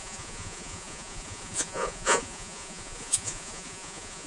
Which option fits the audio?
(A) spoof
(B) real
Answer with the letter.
A